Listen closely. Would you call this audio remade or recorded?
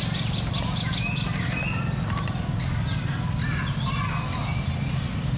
recorded